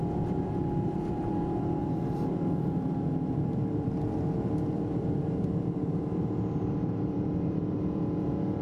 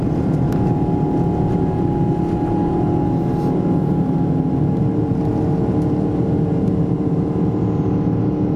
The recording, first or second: second